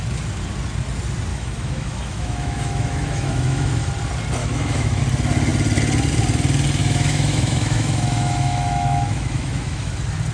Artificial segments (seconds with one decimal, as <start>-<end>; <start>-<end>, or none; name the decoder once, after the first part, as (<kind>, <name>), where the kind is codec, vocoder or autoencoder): 1.3-3.9 (autoencoder, DAC-VAE); 4.4-5.0; 6.8-9.9